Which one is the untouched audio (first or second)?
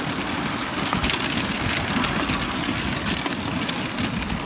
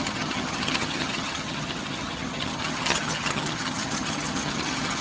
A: first